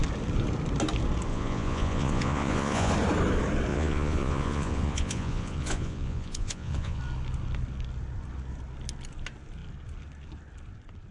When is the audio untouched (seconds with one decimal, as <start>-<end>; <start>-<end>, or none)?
0.0-1.3; 2.9-3.7; 7.0-11.1

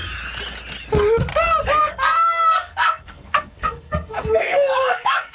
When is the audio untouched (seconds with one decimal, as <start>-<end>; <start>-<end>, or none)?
0.0-1.8